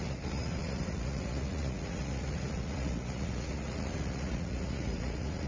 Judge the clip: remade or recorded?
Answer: remade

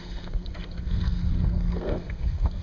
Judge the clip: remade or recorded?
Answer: remade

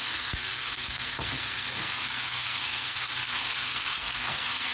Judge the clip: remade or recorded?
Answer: remade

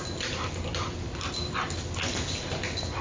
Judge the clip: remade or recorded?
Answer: recorded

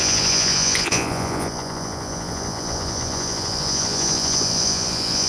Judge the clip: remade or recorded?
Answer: remade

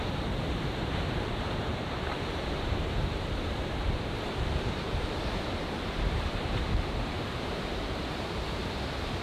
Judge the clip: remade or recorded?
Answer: remade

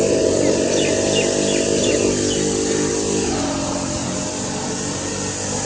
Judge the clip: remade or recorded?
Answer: recorded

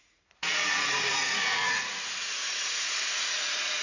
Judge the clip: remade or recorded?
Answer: remade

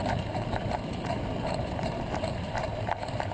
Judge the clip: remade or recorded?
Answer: remade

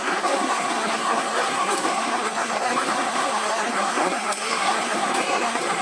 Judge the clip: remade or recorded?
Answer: remade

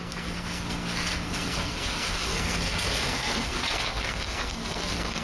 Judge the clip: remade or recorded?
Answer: remade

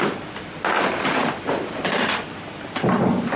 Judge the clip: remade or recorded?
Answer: remade